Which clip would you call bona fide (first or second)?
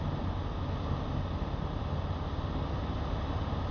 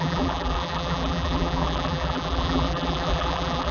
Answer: first